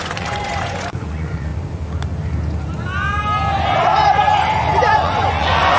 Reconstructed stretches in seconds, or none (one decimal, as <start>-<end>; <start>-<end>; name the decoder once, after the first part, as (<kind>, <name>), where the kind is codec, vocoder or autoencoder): 0.0-1.5 (vocoder, Vocos); 4.9-5.8